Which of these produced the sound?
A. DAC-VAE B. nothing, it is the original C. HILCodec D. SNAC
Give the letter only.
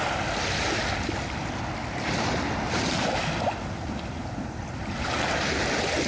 B